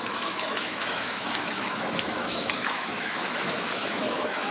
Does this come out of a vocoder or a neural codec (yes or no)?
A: yes